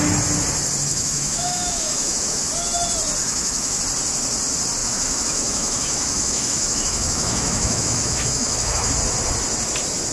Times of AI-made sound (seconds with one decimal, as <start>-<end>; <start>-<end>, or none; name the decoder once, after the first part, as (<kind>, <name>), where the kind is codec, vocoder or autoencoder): 0.9-2.5 (autoencoder, DAC-VAE); 3.2-3.8; 4.8-8.9

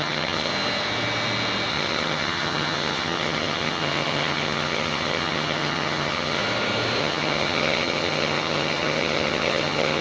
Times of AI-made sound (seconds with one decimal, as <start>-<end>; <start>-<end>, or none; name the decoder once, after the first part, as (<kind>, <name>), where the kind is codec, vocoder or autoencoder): 0.0-0.5 (vocoder, HiFi-GAN); 1.7-6.4; 7.0-10.0

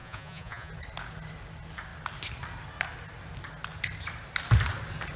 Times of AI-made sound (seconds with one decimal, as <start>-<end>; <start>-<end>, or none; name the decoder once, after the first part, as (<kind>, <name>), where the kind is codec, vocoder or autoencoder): 0.0-0.7 (vocoder, Vocos)

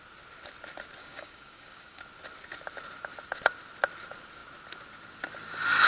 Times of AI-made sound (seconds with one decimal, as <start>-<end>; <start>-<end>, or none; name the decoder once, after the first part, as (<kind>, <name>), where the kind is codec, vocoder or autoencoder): 1.0-2.0 (codec, DAC)

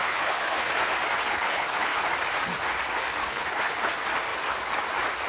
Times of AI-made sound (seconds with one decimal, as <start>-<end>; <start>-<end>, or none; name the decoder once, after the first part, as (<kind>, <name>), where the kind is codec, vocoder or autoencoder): 0.0-0.7 (codec, HILCodec); 1.3-2.0; 3.2-3.7

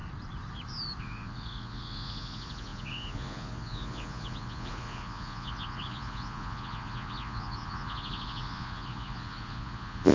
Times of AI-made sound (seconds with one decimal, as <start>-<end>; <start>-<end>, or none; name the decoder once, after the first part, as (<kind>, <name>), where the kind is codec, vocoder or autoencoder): 1.0-10.1 (vocoder, Vocos)

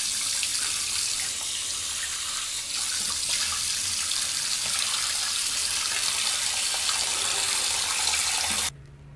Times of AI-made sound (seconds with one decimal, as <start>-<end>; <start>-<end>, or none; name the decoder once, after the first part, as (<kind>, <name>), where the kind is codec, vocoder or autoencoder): 5.6-7.9 (vocoder, BigVGAN v2)

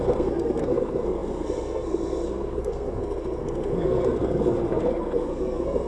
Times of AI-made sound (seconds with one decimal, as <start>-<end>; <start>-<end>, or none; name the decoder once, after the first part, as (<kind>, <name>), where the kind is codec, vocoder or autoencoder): 0.0-5.9 (codec, SNAC)